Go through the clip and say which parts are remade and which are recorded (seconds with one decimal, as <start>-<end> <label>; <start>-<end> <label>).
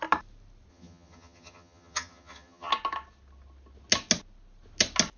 0.0-0.7 recorded; 0.7-2.7 remade; 2.7-5.2 recorded